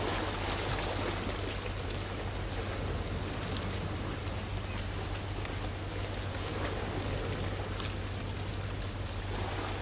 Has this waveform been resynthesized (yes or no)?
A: no